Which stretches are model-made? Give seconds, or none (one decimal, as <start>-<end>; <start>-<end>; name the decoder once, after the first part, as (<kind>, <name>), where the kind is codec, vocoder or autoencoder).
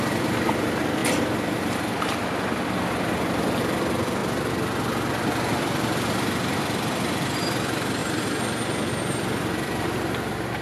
0.0-1.0 (vocoder, BigVGAN v2); 1.6-4.2; 5.6-8.0; 8.9-10.6